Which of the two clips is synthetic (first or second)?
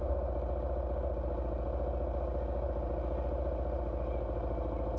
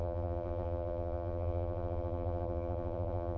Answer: second